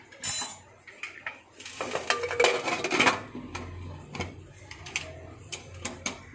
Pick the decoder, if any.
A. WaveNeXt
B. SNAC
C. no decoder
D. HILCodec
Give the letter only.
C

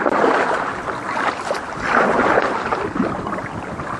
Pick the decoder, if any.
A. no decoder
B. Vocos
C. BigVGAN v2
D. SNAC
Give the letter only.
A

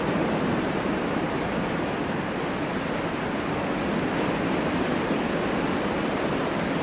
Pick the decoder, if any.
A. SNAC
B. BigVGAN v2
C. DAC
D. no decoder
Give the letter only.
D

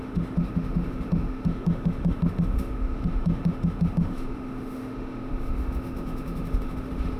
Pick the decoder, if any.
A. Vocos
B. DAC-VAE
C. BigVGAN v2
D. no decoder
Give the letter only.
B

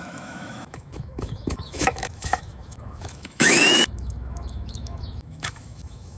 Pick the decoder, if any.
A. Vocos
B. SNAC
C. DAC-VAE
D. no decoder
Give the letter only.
C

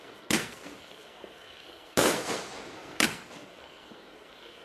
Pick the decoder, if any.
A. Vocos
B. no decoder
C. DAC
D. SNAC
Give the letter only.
D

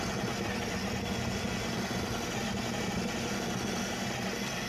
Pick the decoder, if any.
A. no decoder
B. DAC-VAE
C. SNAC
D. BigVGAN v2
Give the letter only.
A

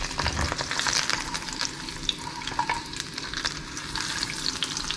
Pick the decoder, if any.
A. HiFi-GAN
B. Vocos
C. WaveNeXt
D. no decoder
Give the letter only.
D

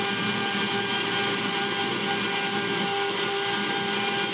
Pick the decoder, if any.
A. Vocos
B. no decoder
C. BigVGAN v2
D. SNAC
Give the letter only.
B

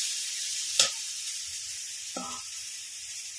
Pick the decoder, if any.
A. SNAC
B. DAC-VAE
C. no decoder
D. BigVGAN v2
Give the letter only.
D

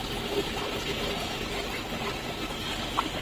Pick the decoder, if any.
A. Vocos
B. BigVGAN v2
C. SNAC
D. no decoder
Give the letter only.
D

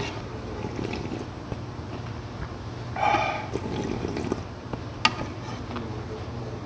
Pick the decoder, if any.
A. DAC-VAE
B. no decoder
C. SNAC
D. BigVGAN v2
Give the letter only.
B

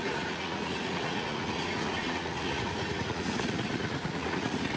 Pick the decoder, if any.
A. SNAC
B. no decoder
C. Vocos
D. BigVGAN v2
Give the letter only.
C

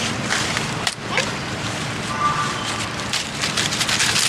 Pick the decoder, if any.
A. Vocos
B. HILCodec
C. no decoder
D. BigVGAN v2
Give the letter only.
C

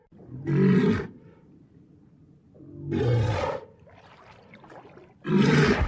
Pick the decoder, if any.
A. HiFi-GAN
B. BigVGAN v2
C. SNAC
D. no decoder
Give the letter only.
D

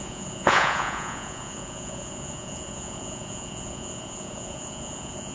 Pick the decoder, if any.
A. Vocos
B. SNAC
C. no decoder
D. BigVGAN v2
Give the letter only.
A